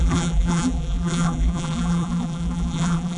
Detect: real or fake fake